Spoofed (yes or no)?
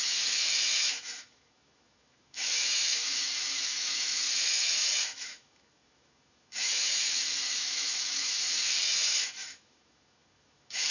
yes